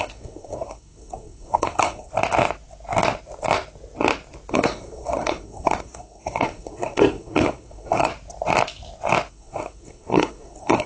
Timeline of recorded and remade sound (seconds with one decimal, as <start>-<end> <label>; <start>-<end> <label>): 0.0-2.1 remade; 2.1-4.5 recorded; 4.5-8.1 remade; 8.1-9.3 recorded; 9.3-10.9 remade